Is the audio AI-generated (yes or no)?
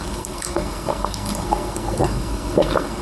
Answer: yes